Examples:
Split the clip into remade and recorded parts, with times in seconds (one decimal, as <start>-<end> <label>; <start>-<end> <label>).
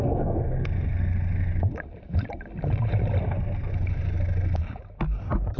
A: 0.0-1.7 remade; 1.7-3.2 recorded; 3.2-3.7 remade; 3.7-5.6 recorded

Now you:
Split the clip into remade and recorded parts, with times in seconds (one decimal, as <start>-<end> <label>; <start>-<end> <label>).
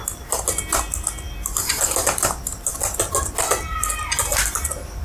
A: 0.0-5.0 recorded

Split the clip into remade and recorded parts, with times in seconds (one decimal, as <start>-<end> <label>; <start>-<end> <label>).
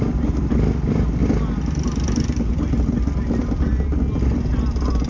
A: 0.0-5.1 recorded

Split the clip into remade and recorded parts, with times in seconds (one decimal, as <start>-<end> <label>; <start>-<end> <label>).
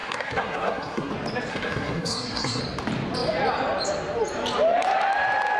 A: 0.0-1.1 remade; 1.1-1.5 recorded; 1.5-2.6 remade; 2.6-5.6 recorded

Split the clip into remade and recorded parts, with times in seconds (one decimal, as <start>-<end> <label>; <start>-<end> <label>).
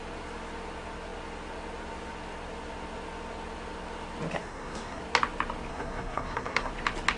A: 0.0-4.4 recorded; 4.4-5.0 remade; 5.0-5.7 recorded; 5.7-6.7 remade; 6.7-7.2 recorded